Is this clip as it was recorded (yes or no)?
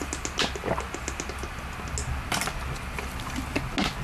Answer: yes